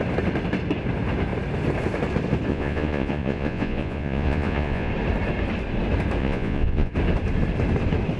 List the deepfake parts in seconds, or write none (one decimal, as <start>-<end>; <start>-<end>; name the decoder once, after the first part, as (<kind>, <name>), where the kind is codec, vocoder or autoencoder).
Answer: 2.5-4.9 (vocoder, Vocos); 6.2-6.9